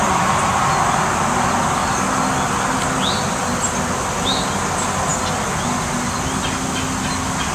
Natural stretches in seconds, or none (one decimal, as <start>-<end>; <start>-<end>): 0.0-7.5